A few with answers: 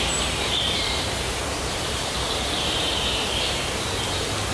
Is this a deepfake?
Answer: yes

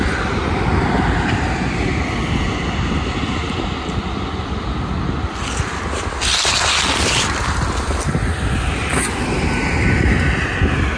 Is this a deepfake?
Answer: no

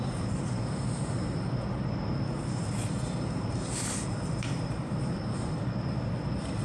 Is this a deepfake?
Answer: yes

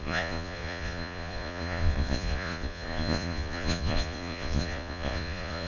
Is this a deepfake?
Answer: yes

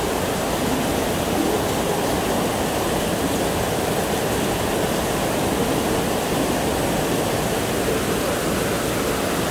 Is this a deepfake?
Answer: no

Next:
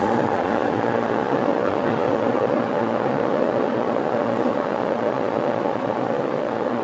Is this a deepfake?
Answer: yes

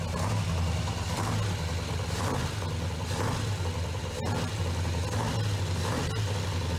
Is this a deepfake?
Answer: no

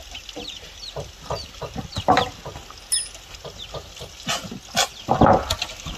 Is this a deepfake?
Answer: no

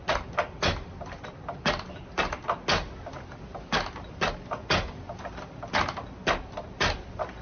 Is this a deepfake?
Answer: no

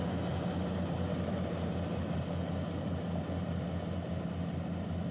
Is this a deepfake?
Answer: no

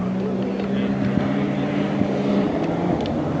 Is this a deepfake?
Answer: no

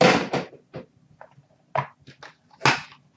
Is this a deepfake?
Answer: no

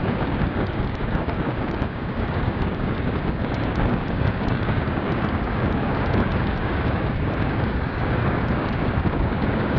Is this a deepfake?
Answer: yes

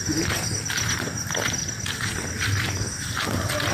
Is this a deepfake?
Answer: no